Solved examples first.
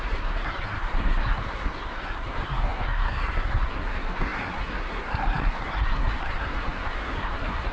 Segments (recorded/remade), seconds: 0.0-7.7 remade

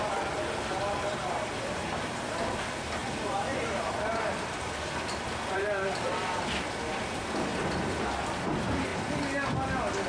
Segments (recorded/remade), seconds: 0.0-1.2 recorded; 1.2-2.6 remade; 2.6-3.0 recorded; 3.0-6.6 remade; 6.6-7.5 recorded; 7.5-8.0 remade; 8.0-10.1 recorded

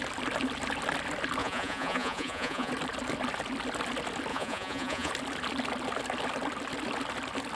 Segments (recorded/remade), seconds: 0.0-1.4 recorded; 1.4-2.7 remade; 2.7-4.3 recorded; 4.3-5.1 remade; 5.1-7.5 recorded

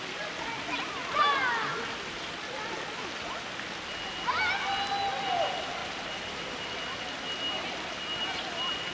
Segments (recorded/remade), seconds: 0.0-8.9 recorded

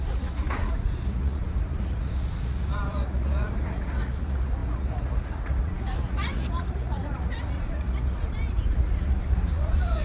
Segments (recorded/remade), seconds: 0.0-10.0 remade